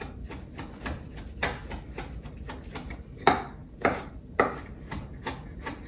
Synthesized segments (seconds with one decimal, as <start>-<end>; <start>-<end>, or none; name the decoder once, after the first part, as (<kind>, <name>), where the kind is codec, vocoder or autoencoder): 3.6-4.2 (vocoder, BigVGAN v2)